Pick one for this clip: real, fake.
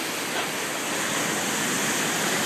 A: real